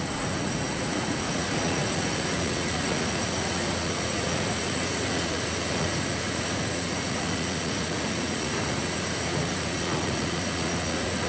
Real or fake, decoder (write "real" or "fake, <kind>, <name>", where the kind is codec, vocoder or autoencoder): fake, vocoder, Vocos